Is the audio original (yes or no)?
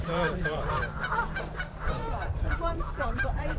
no